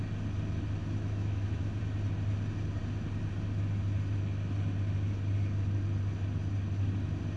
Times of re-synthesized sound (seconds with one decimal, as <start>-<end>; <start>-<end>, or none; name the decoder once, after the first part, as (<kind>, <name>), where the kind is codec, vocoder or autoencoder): 0.8-1.8 (autoencoder, DAC-VAE)